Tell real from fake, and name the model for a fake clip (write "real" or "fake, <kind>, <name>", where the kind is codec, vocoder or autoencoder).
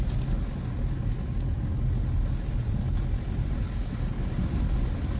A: real